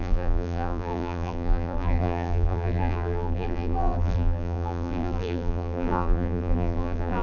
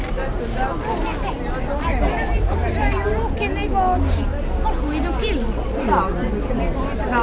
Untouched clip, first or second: second